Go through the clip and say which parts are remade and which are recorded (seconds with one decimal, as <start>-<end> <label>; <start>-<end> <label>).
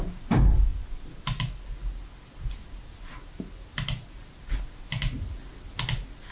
0.0-6.3 recorded